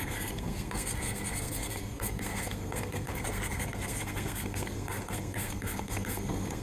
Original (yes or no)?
no